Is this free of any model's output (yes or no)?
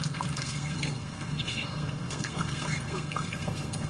no